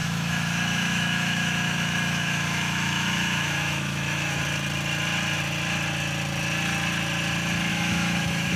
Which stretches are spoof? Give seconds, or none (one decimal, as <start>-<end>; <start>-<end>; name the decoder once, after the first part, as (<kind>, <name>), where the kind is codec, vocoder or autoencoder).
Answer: 0.0-4.4 (autoencoder, DAC-VAE); 7.7-8.6